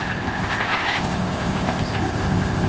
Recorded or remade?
remade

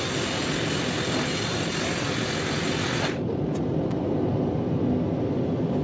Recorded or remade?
recorded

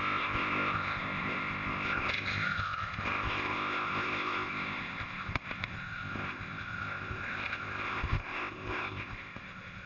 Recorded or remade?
remade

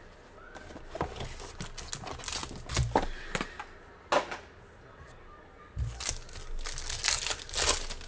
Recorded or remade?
recorded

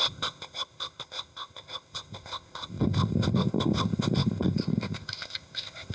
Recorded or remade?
remade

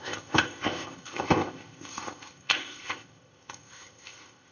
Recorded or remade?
remade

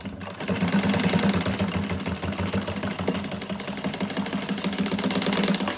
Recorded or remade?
recorded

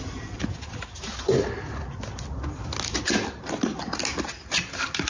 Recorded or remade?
recorded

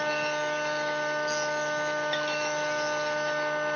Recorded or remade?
recorded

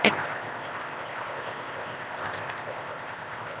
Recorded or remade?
remade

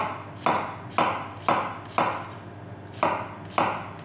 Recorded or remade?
recorded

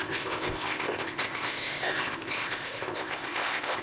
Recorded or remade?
remade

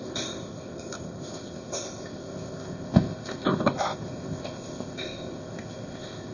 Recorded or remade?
remade